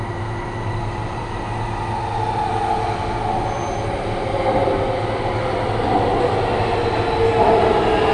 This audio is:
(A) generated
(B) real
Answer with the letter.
B